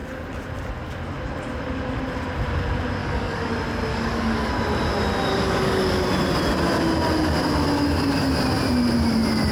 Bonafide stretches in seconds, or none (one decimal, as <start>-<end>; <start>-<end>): 0.0-3.0; 3.5-3.9; 4.5-5.3; 6.0-9.5